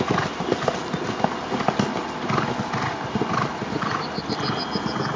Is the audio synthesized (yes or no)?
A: no